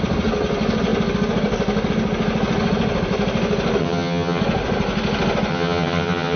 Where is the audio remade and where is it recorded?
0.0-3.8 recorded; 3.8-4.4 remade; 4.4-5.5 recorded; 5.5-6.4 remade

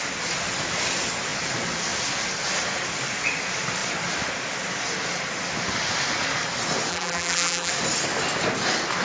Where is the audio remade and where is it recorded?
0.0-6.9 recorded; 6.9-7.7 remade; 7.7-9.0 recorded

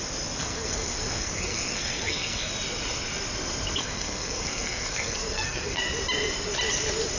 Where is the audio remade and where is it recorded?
0.0-0.4 recorded; 0.4-2.5 remade; 2.5-3.8 recorded; 3.8-5.8 remade; 5.8-7.2 recorded

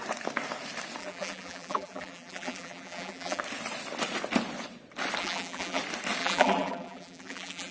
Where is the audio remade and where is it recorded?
0.0-1.0 recorded; 1.0-3.4 remade; 3.4-5.2 recorded; 5.2-5.8 remade; 5.8-6.2 recorded; 6.2-7.7 remade

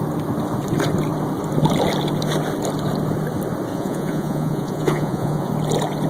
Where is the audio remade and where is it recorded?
0.0-3.7 recorded; 3.7-5.5 remade; 5.5-6.1 recorded

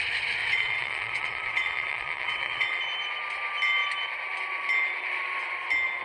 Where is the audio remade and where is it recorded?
0.0-0.4 recorded; 0.4-2.8 remade; 2.8-6.0 recorded

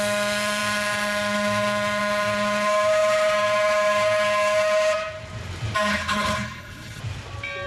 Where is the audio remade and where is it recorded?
0.0-5.9 recorded; 5.9-7.0 remade; 7.0-7.7 recorded

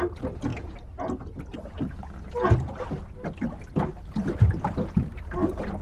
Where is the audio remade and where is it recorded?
0.0-5.8 recorded